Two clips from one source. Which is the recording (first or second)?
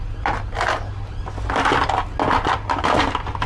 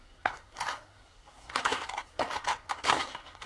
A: first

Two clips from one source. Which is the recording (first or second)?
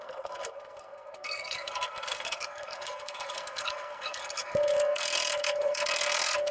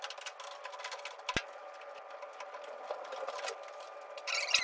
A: second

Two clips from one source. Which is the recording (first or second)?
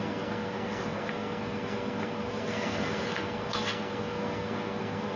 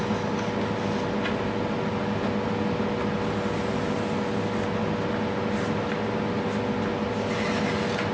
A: second